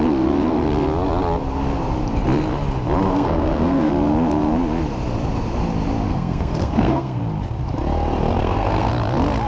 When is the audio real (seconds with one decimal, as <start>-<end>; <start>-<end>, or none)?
0.0-3.1; 3.9-6.1; 7.2-8.4; 8.9-9.5